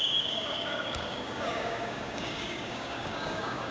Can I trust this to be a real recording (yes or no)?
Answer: no